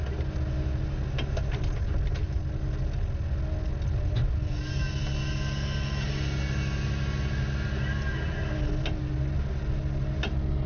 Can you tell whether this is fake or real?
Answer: real